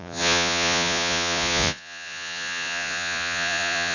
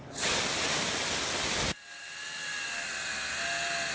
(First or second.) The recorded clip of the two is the second